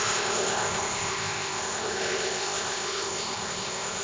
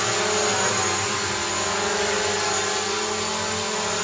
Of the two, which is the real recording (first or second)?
second